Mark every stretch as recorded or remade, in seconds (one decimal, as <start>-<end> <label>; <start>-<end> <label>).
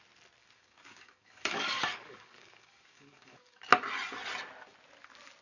0.0-0.4 recorded; 0.4-3.6 remade; 3.6-5.4 recorded